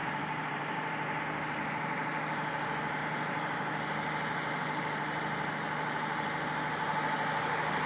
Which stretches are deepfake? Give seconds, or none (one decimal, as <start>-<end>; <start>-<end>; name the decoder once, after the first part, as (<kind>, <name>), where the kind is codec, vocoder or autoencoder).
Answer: 0.0-1.2 (vocoder, BigVGAN v2)